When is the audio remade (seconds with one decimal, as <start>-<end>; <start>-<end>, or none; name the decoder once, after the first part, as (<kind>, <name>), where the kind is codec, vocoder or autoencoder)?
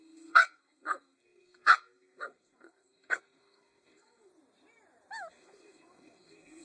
0.0-4.3 (codec, SNAC); 5.3-6.6